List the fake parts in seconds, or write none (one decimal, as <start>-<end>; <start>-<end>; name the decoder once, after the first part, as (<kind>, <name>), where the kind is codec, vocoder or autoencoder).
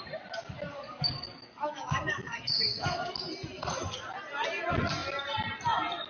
0.7-3.1 (codec, DAC)